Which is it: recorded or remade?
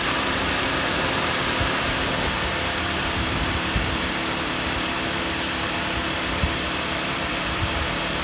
remade